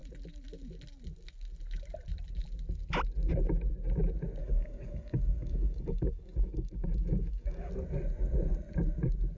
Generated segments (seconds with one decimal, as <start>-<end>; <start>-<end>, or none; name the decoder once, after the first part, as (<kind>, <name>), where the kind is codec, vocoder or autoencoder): 4.4-7.7 (codec, DAC)